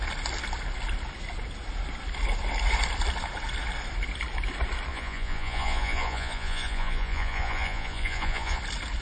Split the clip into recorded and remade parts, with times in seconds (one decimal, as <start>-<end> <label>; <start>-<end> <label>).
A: 0.0-4.9 recorded; 4.9-8.6 remade; 8.6-9.0 recorded